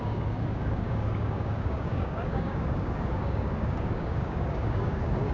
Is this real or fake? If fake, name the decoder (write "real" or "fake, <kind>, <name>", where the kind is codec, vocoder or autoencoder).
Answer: fake, codec, DAC